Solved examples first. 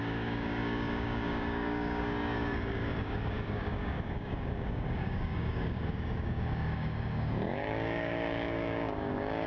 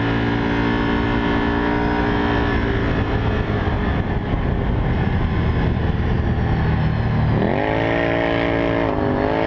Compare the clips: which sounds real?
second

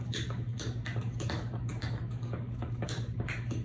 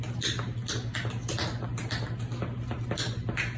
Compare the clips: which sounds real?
second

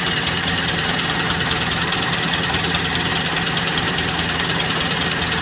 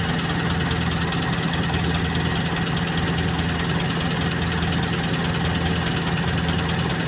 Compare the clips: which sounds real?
second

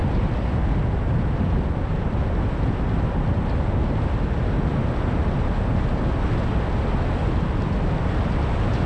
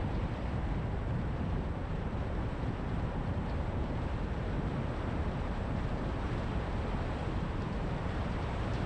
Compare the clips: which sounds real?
first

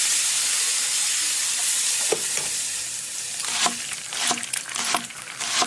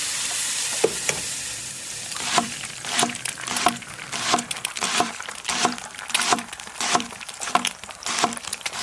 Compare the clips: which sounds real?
first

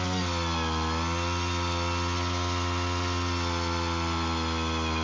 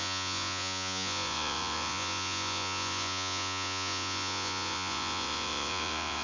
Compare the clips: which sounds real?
first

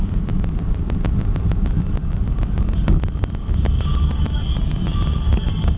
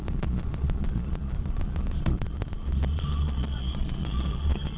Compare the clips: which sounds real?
first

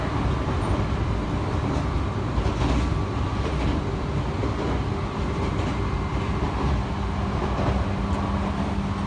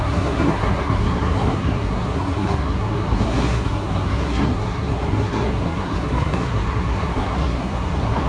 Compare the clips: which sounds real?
first